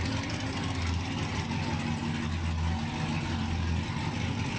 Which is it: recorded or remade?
recorded